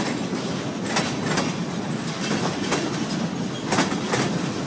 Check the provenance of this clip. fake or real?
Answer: real